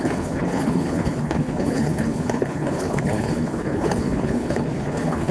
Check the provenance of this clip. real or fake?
fake